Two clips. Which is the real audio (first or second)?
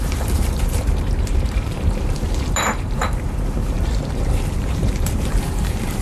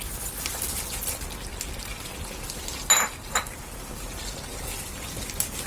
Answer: second